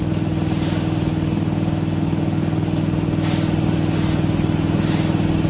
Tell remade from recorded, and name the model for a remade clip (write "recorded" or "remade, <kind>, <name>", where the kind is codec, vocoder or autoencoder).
recorded